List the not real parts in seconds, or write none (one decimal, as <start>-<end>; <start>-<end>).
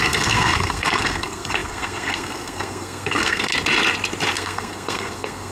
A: 0.0-3.5; 4.3-5.5